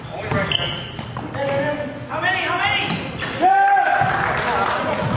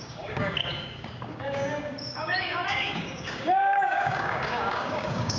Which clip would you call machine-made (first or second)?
second